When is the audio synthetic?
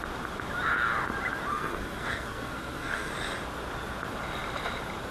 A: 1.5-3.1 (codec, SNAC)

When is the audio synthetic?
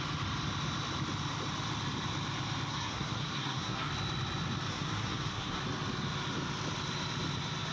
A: 2.7-3.9 (codec, SNAC); 4.7-5.6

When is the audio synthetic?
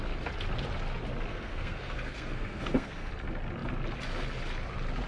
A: 1.3-3.1 (codec, SNAC)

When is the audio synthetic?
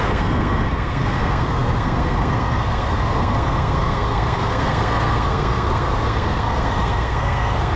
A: 0.0-7.8 (codec, SNAC)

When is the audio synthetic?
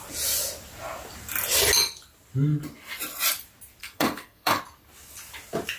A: 3.8-4.6 (codec, SNAC)